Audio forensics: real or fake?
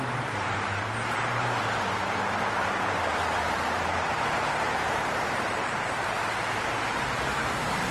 fake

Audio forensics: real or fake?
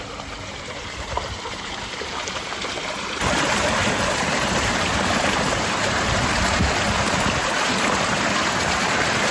fake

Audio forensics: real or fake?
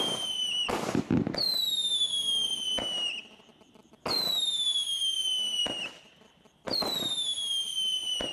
real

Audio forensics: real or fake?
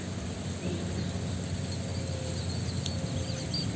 real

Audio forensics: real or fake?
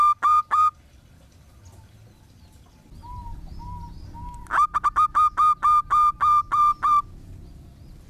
real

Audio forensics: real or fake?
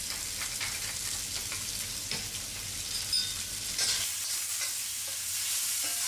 real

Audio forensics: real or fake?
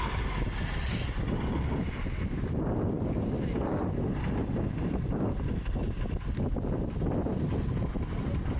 real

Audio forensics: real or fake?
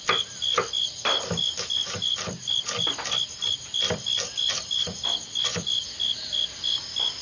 real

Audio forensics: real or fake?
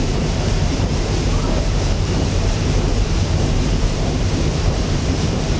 fake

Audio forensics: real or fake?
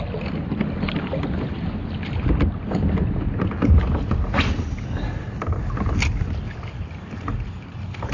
real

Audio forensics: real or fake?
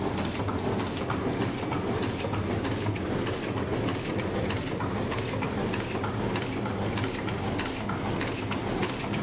real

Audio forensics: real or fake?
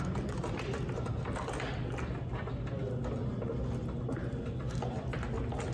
real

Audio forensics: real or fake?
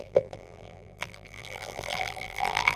fake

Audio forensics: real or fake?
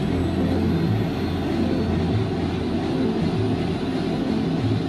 real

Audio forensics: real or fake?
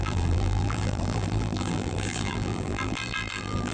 fake